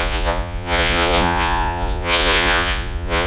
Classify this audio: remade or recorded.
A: remade